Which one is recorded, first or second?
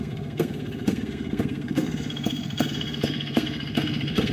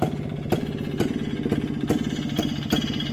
second